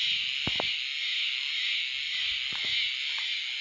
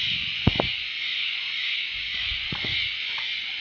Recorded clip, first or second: first